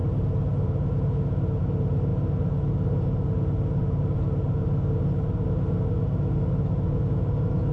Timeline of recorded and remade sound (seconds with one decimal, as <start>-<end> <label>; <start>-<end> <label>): 0.0-7.7 recorded